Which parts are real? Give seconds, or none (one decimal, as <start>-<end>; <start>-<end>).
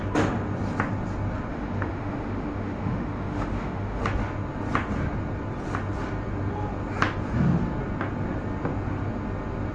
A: 0.0-1.5; 4.0-9.7